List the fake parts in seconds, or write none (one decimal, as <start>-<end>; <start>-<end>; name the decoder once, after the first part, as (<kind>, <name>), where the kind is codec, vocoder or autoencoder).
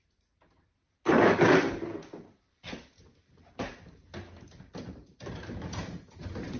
0.0-0.8 (vocoder, BigVGAN v2); 4.8-6.6